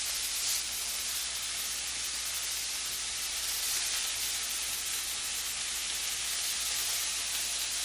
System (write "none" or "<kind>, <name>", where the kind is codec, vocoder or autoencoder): none